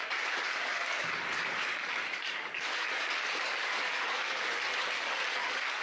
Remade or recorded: remade